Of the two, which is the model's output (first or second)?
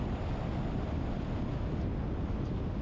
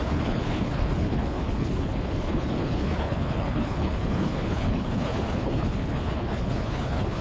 second